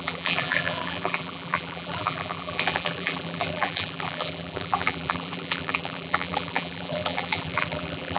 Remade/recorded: remade